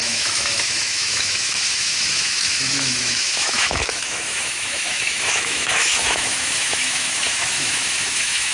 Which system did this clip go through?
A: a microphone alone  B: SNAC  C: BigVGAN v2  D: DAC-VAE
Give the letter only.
D